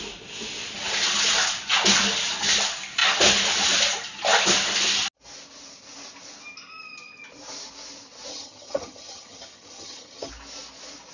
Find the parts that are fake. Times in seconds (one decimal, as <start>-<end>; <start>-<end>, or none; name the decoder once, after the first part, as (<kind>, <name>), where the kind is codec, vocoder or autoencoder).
8.3-10.3 (vocoder, HiFi-GAN)